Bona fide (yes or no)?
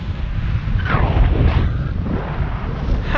no